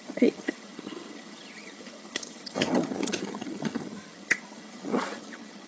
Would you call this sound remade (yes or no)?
yes